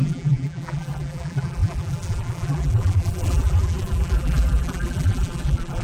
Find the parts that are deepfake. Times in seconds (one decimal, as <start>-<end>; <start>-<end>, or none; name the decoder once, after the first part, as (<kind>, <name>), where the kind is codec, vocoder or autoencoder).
0.0-5.8 (vocoder, BigVGAN v2)